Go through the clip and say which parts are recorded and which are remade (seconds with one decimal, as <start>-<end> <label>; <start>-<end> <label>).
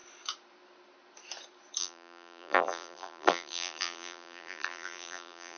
0.0-1.8 recorded; 1.8-5.6 remade